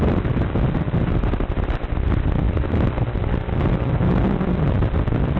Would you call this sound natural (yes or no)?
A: yes